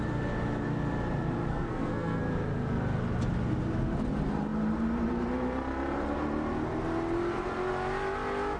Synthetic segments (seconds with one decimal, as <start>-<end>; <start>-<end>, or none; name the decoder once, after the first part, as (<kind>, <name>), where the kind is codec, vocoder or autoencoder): 1.5-2.2 (codec, SNAC)